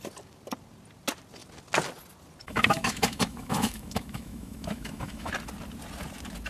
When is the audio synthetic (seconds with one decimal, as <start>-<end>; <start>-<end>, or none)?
2.4-5.3

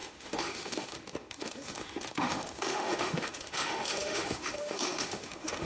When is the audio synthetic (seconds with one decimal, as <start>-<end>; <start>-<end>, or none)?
0.0-5.7

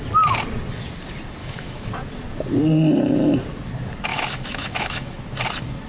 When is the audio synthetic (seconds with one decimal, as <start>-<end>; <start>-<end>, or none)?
1.4-1.9; 4.1-5.2